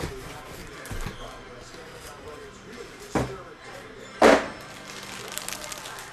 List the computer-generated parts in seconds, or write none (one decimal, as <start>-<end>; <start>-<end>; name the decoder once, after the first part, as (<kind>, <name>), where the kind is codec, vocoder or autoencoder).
0.6-4.3 (vocoder, BigVGAN v2)